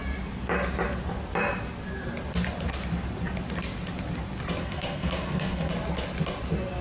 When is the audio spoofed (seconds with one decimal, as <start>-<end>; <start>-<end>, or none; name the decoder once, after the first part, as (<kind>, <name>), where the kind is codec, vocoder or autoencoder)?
4.6-5.7 (codec, SNAC)